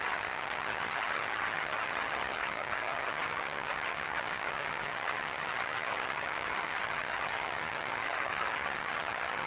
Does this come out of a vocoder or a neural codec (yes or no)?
yes